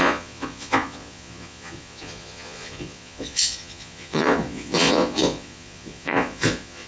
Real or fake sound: fake